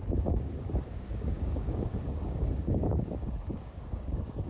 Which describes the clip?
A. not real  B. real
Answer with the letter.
A